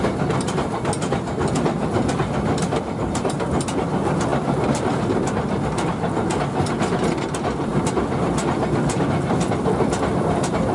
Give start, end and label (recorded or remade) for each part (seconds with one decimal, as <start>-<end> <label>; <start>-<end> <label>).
0.0-10.7 recorded